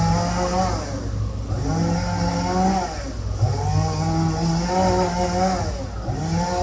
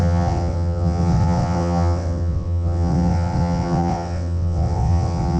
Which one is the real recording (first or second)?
first